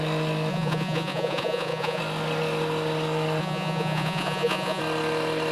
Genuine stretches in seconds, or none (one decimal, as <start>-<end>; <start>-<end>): 0.0-0.5; 2.0-3.4; 4.8-5.5